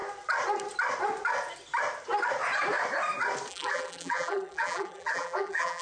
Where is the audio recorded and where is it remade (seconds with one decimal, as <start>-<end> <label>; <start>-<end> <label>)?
0.0-3.5 recorded; 3.5-5.8 remade